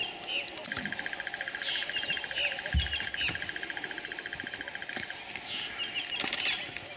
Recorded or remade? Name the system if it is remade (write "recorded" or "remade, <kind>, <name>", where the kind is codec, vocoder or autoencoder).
recorded